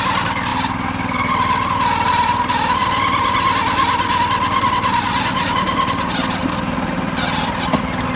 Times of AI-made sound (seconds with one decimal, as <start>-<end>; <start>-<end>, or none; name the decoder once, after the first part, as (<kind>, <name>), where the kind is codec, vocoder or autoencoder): none